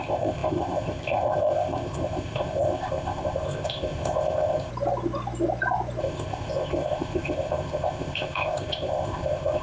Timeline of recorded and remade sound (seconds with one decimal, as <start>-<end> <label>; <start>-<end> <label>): 0.0-4.7 remade; 4.7-6.0 recorded; 6.0-9.6 remade